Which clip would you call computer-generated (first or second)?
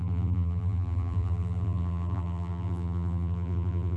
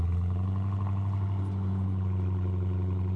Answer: first